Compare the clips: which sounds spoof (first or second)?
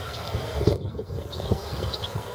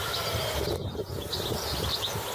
first